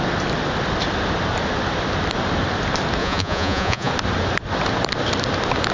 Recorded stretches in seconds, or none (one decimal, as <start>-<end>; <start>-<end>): 0.0-3.0; 3.9-5.7